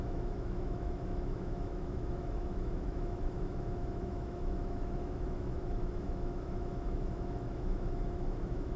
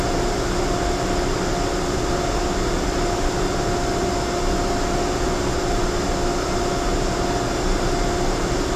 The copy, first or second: first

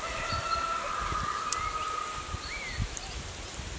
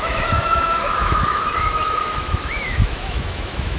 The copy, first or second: second